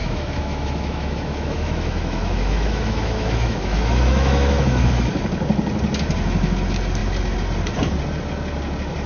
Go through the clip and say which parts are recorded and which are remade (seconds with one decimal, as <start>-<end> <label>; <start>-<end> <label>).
0.0-4.9 remade; 4.9-9.1 recorded